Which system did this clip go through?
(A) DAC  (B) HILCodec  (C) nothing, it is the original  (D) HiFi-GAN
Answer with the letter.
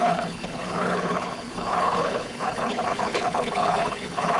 B